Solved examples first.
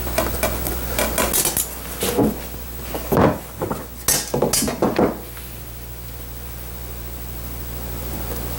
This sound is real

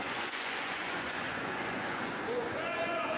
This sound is fake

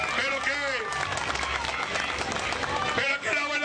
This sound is real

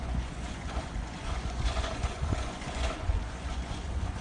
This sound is fake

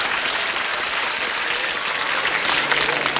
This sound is real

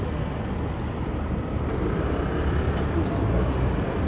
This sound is real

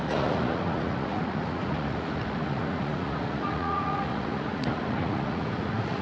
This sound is fake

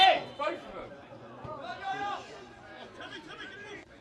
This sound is fake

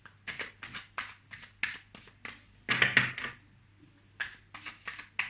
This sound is real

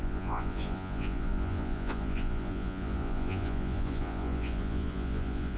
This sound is fake